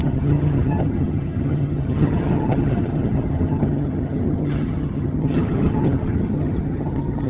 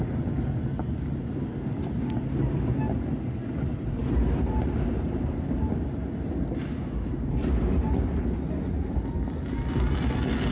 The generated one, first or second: first